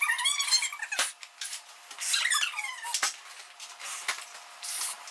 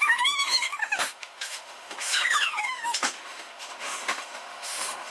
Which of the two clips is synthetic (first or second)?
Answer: second